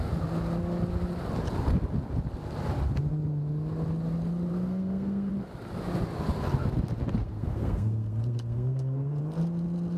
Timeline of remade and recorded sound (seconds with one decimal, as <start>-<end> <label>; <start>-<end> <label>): 0.0-4.5 recorded; 4.5-5.3 remade; 5.3-7.2 recorded; 7.2-9.2 remade; 9.2-10.0 recorded